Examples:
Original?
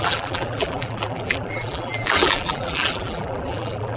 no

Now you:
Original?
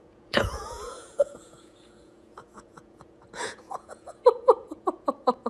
no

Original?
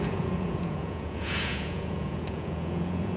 no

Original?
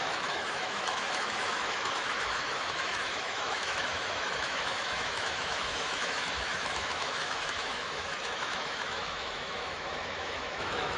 no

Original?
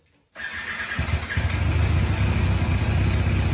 yes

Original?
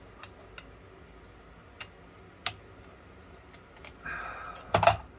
yes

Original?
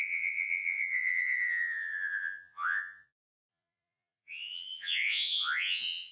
no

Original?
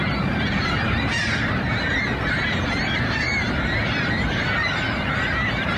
no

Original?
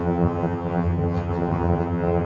no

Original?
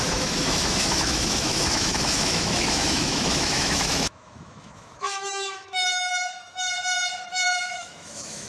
no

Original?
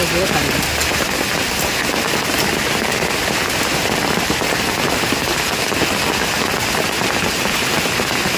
yes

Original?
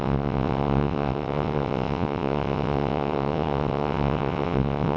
no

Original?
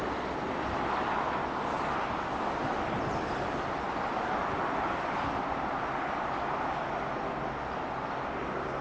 yes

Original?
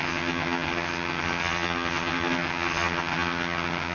no